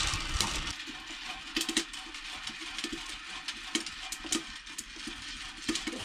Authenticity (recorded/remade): recorded